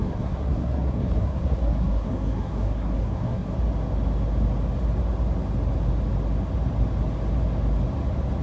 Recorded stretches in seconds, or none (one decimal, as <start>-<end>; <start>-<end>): 3.5-8.4